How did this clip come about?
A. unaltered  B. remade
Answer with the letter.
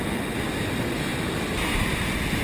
A